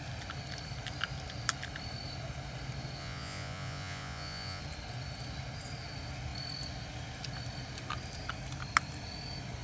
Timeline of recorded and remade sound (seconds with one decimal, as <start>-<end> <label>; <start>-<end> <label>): 0.0-3.0 recorded; 3.0-4.6 remade; 4.6-9.6 recorded